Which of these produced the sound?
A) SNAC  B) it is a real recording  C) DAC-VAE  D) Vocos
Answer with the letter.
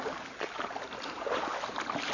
B